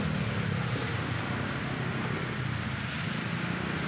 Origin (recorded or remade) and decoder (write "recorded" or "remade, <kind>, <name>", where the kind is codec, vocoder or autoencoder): recorded